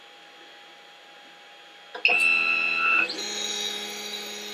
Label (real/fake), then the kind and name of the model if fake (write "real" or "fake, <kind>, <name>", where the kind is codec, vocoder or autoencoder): real